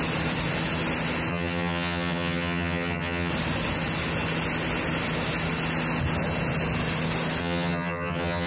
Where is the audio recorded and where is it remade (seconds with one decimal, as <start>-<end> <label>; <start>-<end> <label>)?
0.0-1.3 recorded; 1.3-3.3 remade; 3.3-7.4 recorded; 7.4-8.5 remade